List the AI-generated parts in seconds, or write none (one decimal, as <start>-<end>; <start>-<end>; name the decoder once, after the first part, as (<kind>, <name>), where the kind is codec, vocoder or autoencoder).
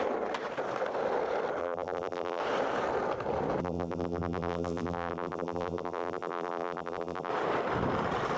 1.6-2.4 (vocoder, BigVGAN v2); 3.6-7.3